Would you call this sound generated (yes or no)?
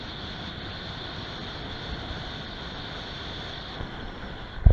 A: no